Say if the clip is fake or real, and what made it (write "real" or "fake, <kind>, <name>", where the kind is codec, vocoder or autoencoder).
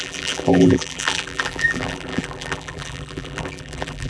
fake, vocoder, BigVGAN v2